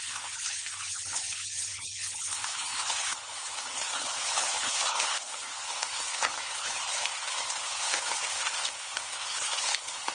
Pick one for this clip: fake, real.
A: fake